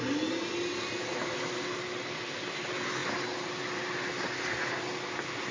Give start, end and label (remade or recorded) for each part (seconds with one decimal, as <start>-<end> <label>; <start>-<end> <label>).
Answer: 0.0-5.5 recorded

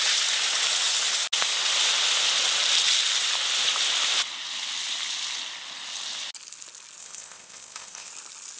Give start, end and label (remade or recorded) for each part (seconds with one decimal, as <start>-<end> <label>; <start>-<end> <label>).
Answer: 0.0-7.0 recorded; 7.0-8.1 remade; 8.1-8.6 recorded